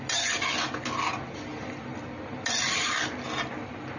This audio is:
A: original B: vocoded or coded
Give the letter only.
A